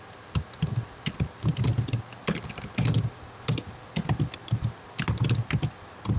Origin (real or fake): real